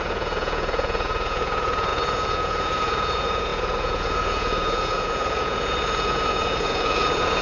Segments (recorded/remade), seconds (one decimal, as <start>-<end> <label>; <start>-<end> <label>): 0.0-7.4 remade